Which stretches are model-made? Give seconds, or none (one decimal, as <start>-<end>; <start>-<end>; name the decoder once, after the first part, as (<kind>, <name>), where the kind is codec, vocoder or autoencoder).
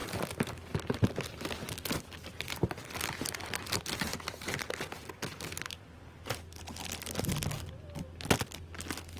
none